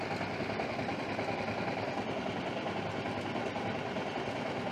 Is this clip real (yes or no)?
yes